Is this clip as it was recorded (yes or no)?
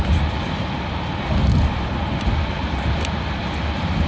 yes